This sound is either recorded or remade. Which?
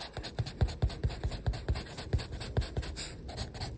recorded